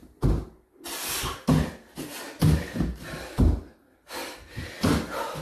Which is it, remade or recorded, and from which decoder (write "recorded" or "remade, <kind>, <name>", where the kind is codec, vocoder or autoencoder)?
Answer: recorded